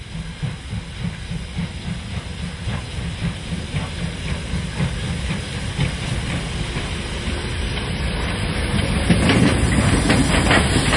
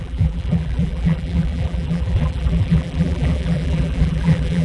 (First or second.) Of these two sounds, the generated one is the second